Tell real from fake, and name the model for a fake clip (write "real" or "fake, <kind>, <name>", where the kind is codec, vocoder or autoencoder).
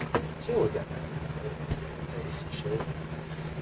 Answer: real